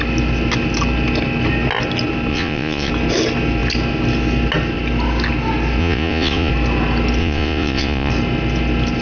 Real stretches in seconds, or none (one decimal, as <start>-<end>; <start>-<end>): 0.0-2.3; 2.9-5.8; 6.5-7.2; 8.1-9.0